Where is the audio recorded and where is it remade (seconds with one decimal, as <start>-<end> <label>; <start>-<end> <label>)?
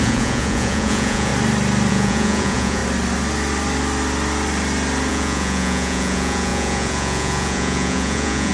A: 0.0-1.3 remade; 1.3-1.9 recorded; 1.9-2.8 remade; 2.8-5.1 recorded; 5.1-8.5 remade